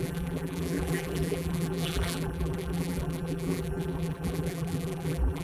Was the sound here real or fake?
fake